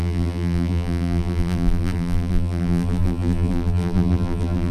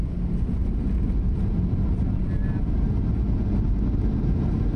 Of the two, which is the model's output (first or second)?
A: first